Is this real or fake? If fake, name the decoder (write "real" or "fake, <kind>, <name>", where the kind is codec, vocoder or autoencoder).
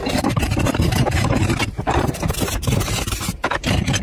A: fake, vocoder, BigVGAN v2